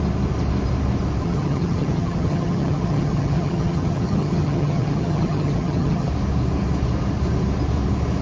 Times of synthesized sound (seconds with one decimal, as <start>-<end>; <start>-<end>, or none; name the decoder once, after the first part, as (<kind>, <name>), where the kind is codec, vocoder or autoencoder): 1.2-6.1 (vocoder, HiFi-GAN)